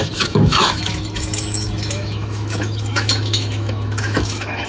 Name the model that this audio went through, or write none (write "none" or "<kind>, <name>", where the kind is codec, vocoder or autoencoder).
autoencoder, DAC-VAE